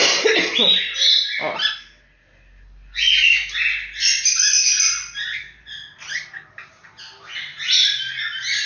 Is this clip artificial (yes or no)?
no